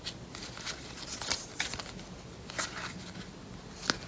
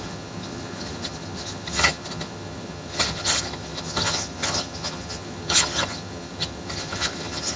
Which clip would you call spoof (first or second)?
second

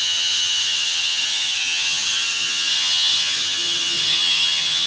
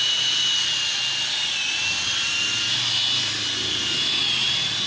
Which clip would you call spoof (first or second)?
first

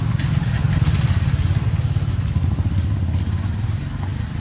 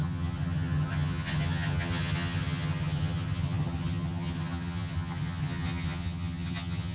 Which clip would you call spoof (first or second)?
second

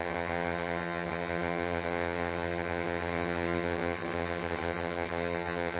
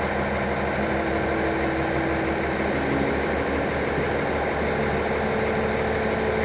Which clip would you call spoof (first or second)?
first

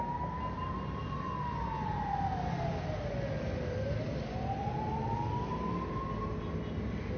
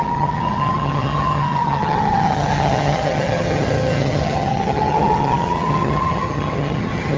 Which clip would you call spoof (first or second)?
second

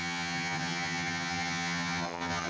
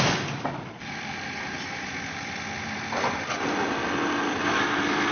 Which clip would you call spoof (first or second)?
first